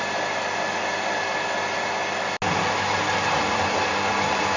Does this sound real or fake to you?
real